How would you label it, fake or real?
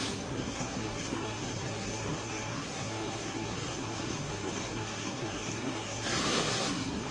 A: fake